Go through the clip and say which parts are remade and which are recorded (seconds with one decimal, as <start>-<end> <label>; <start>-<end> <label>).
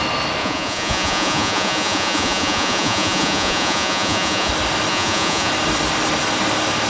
0.0-0.4 recorded; 0.4-4.5 remade; 4.5-4.9 recorded; 4.9-5.5 remade; 5.5-6.9 recorded